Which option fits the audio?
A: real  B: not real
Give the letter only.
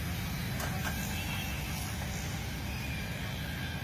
A